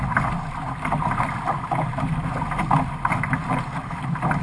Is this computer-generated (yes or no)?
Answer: no